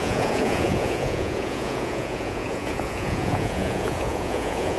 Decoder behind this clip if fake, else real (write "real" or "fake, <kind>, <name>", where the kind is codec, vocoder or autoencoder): fake, vocoder, Vocos